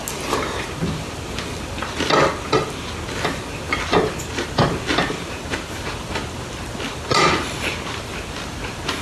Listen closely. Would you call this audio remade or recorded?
recorded